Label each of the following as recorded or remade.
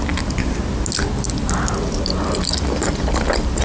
recorded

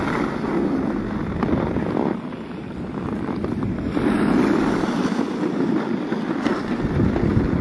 recorded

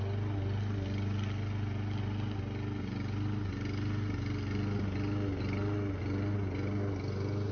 recorded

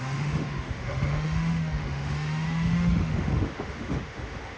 remade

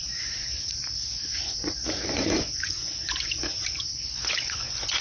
remade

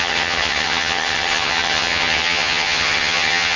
remade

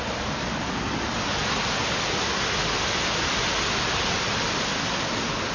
recorded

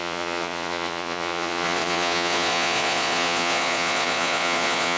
remade